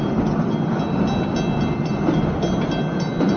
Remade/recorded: recorded